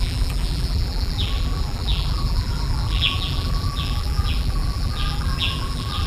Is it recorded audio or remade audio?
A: remade